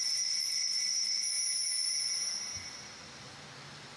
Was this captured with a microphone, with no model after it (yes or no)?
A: yes